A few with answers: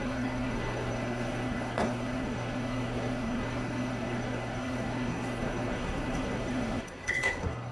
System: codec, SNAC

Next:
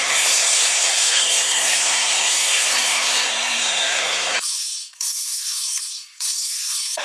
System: codec, SNAC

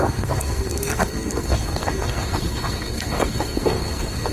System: codec, SNAC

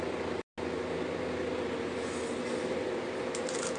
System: none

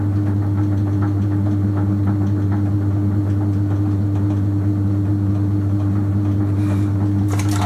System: none